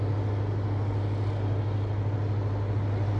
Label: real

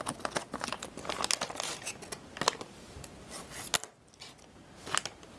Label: real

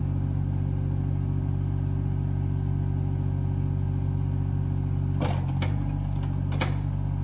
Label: real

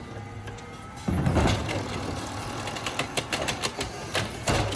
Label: real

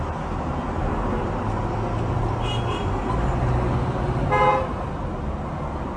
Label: real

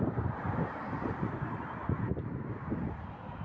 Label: real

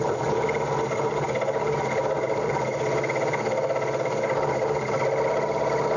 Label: real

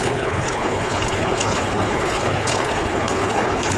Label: fake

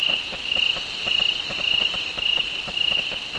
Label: real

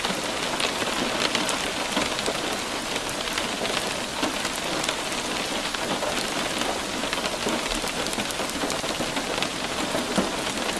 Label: real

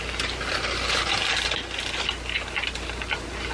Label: real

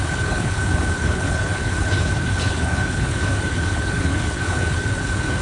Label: fake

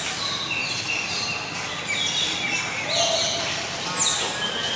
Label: real